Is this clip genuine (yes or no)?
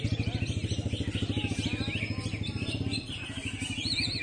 yes